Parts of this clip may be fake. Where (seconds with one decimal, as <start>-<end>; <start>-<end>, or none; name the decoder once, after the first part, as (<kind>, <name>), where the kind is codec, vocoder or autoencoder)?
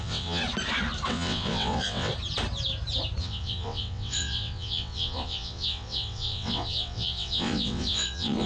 0.0-0.4 (vocoder, WaveNeXt); 1.1-2.1; 3.2-8.5